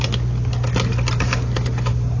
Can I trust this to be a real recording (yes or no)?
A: yes